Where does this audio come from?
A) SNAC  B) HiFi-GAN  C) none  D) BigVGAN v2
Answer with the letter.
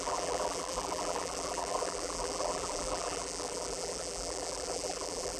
D